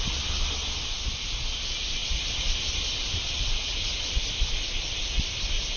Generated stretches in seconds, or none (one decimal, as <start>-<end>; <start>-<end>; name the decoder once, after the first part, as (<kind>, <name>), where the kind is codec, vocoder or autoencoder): none